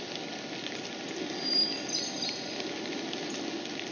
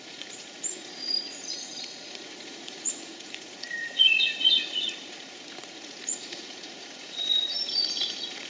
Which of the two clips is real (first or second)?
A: first